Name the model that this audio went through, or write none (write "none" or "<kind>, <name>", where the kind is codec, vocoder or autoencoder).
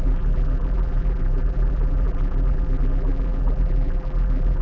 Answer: vocoder, BigVGAN v2